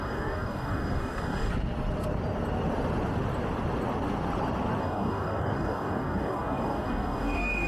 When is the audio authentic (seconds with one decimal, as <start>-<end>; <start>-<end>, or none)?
1.5-4.8